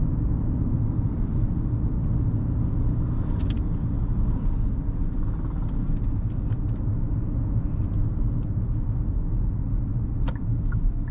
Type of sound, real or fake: real